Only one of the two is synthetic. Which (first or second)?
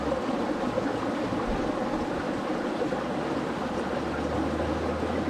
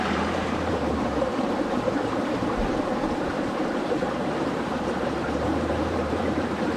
second